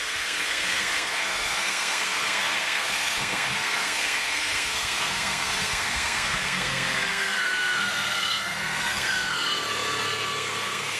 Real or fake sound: fake